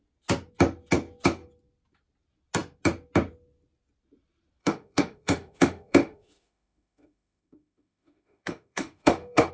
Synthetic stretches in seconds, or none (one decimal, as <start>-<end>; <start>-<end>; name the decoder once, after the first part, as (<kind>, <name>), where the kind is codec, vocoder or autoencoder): 4.6-9.5 (autoencoder, DAC-VAE)